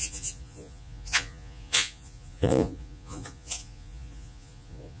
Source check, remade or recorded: remade